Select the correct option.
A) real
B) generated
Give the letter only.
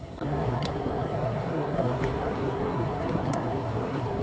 B